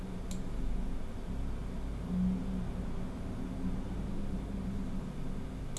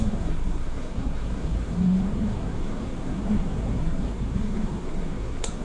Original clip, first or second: first